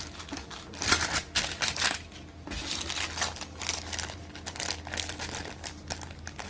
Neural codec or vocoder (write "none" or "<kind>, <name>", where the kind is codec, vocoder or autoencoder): none